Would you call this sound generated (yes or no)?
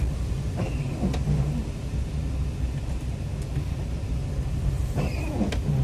no